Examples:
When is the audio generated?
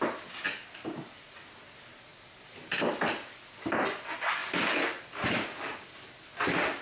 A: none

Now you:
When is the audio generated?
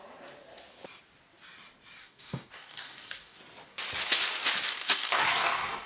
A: 2.0-3.4; 4.8-5.9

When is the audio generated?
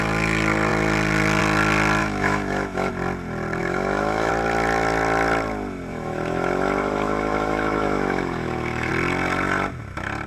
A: 2.0-2.9; 3.6-4.3; 5.9-8.9